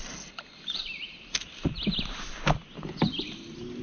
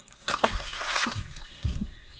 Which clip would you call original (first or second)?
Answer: first